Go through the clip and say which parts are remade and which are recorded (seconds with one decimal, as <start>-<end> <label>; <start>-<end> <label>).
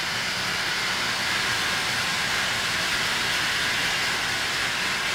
0.0-5.1 recorded